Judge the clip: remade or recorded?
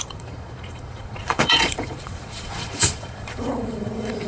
remade